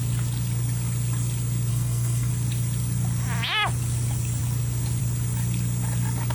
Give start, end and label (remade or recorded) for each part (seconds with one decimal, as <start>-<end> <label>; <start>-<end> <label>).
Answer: 0.0-1.7 recorded; 1.7-2.3 remade; 2.3-6.3 recorded